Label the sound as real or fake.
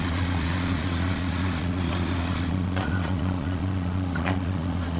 fake